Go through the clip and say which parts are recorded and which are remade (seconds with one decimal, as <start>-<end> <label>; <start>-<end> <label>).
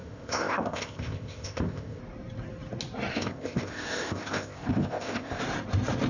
0.0-2.0 remade; 2.0-3.1 recorded; 3.1-5.4 remade; 5.4-6.1 recorded